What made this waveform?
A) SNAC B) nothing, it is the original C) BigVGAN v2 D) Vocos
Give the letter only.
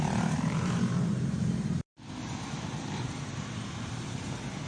C